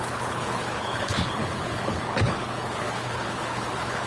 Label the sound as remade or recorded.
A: remade